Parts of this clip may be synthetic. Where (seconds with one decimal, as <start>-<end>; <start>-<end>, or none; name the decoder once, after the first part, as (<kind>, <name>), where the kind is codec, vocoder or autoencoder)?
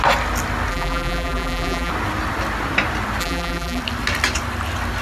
0.7-1.9 (vocoder, BigVGAN v2); 3.2-3.8